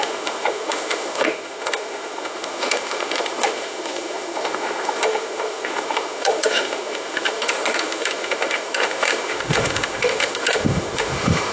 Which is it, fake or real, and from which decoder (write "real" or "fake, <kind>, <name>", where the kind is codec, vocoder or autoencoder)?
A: fake, autoencoder, DAC-VAE